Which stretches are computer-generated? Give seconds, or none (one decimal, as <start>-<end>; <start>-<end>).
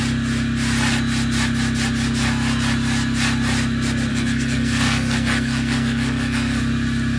4.1-6.6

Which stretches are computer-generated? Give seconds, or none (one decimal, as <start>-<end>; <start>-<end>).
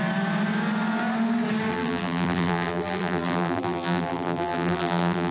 1.7-5.3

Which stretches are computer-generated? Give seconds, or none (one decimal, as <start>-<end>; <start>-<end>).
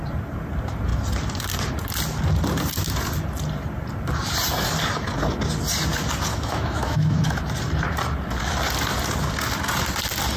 6.3-7.2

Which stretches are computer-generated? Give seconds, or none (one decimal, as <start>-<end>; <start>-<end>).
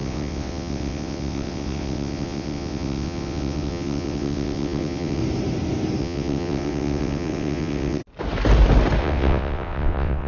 0.0-5.2; 6.0-8.0; 9.0-10.3